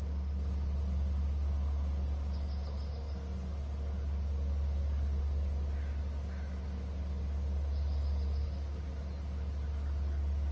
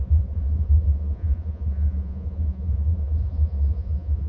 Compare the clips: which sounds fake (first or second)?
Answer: second